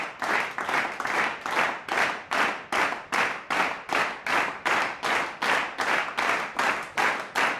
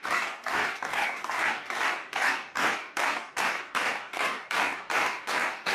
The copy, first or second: second